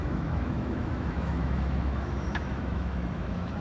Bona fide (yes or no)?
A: no